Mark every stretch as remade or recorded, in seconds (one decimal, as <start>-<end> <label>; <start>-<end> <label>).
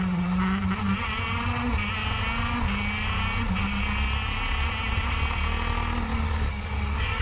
0.0-6.1 recorded; 6.1-7.2 remade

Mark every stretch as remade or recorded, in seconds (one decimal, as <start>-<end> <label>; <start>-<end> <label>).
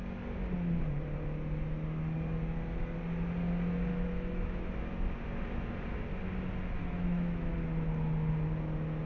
0.0-3.9 recorded; 3.9-4.7 remade; 4.7-6.8 recorded; 6.8-7.5 remade; 7.5-9.1 recorded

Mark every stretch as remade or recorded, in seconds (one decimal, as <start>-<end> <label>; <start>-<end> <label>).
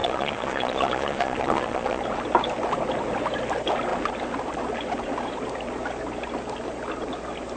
0.0-2.0 remade; 2.0-7.6 recorded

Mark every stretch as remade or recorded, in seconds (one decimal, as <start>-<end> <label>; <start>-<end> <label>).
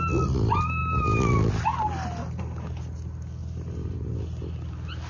0.0-3.4 recorded; 3.4-4.2 remade; 4.2-5.1 recorded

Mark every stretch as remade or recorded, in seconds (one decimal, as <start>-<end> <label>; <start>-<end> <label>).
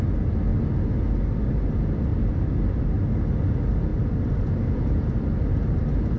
0.0-3.9 recorded; 3.9-6.2 remade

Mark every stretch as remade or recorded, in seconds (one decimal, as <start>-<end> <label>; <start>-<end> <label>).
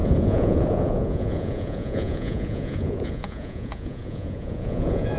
0.0-5.2 remade